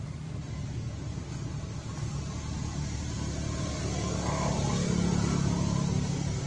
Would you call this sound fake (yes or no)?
no